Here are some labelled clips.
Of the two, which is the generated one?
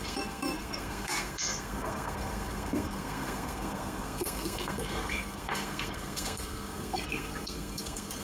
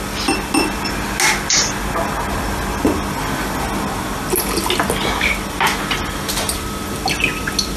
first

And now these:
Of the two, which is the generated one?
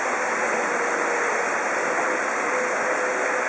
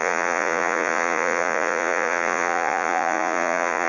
second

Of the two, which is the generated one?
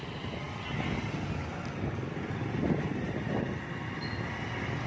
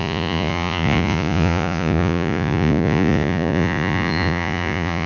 second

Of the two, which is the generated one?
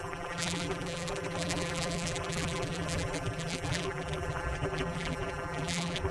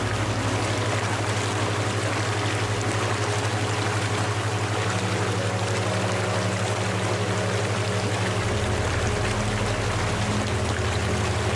first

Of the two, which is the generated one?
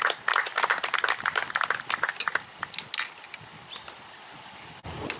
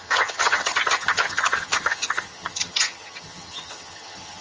second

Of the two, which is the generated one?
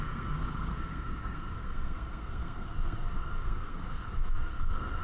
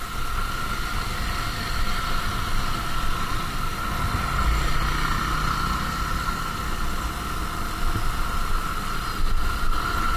first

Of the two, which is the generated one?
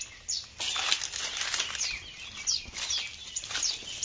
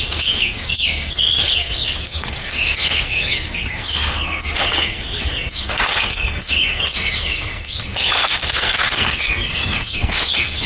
second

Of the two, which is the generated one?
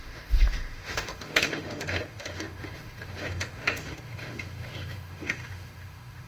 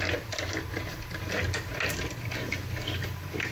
first